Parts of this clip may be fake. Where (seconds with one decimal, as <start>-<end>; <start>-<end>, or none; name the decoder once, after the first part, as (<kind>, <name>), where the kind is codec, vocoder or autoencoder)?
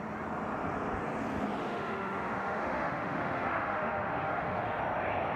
1.6-4.8 (autoencoder, DAC-VAE)